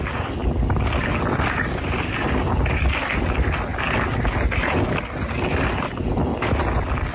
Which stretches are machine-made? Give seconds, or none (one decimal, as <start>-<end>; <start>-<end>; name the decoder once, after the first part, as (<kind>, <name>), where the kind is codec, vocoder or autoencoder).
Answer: none